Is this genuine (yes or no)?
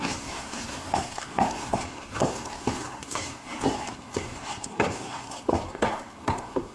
no